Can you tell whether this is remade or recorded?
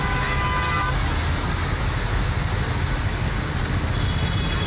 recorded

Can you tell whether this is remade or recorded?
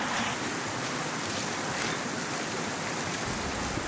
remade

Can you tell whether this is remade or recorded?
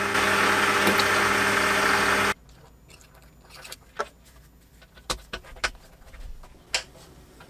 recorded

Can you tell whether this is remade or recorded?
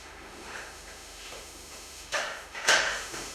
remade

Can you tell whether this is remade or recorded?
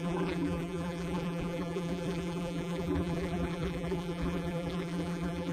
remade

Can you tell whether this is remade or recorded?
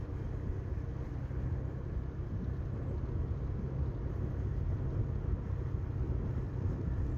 recorded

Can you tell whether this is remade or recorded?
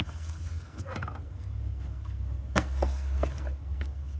remade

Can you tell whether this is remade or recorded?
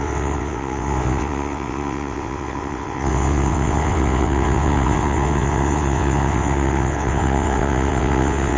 remade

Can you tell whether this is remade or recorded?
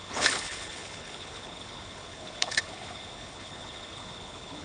remade